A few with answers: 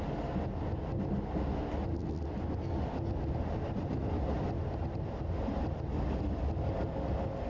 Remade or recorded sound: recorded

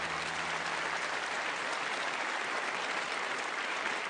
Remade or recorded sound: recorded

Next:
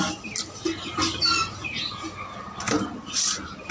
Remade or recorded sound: recorded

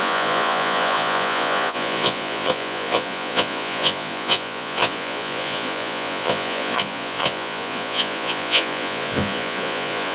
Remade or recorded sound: remade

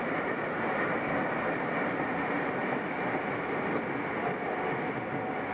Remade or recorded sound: recorded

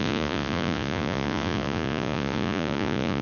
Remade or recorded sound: remade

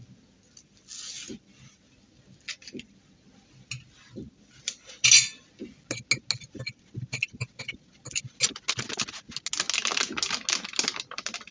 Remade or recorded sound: recorded